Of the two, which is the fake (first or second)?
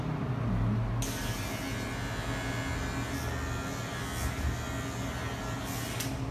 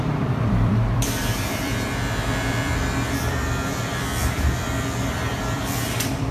second